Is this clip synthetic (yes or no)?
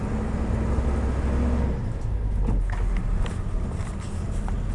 no